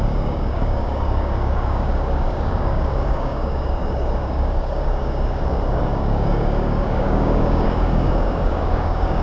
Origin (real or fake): fake